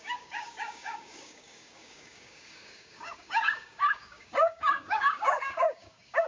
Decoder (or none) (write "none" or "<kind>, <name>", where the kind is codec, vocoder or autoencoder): codec, DAC